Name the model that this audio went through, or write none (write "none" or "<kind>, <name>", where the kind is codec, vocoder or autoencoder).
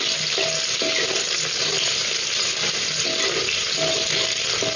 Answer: none